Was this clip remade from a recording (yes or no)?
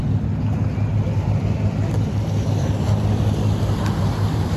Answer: no